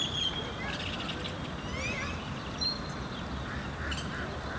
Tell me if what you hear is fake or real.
real